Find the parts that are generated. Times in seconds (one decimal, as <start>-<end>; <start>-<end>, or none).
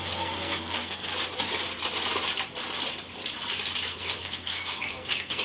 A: 0.0-1.1; 3.9-5.4